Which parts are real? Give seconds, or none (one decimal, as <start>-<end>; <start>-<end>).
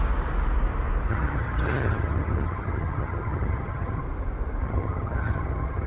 0.0-1.1; 4.0-4.6